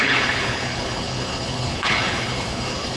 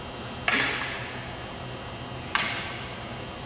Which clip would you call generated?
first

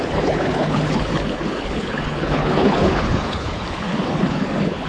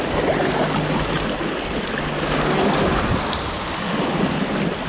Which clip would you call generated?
first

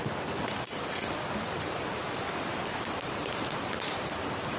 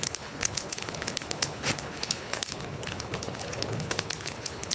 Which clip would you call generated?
second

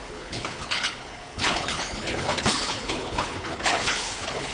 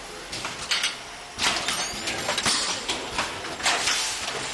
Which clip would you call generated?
first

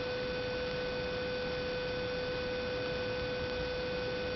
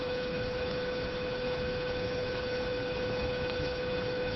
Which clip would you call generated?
second